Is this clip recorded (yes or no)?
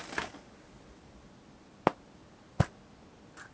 yes